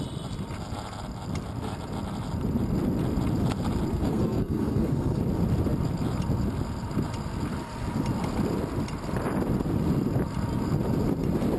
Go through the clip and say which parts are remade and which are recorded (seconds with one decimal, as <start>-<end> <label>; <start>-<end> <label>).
0.0-3.9 recorded; 3.9-5.2 remade; 5.2-11.6 recorded